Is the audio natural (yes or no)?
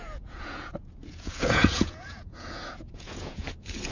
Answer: no